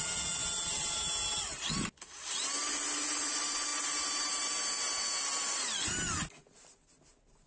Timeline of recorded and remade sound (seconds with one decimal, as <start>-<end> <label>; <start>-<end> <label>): 0.0-7.5 recorded

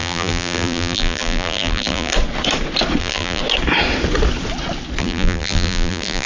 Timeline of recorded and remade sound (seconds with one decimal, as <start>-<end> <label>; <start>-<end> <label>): 0.0-2.1 remade; 2.1-3.0 recorded; 3.0-3.4 remade; 3.4-5.0 recorded; 5.0-6.3 remade

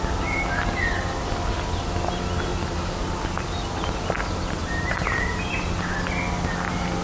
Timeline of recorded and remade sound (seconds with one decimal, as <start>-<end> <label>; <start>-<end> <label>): 0.0-2.5 recorded; 2.5-3.0 remade; 3.0-4.6 recorded; 4.6-5.5 remade; 5.5-7.0 recorded

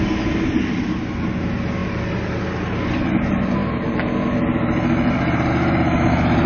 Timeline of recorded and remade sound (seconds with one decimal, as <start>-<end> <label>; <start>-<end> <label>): 0.0-6.5 recorded